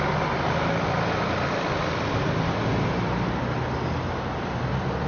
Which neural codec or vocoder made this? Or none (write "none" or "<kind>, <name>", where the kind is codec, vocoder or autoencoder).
none